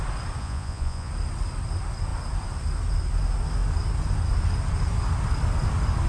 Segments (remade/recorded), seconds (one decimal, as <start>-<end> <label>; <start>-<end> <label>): 0.0-0.4 recorded; 0.4-1.1 remade; 1.1-6.1 recorded

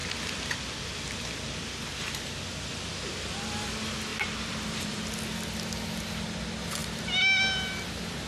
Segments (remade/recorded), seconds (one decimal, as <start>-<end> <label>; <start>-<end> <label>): 0.0-4.1 recorded; 4.1-5.0 remade; 5.0-8.3 recorded